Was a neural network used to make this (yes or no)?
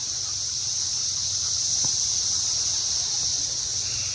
no